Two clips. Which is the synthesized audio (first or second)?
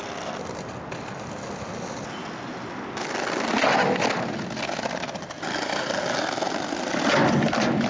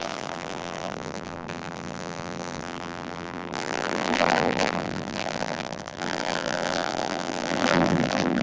second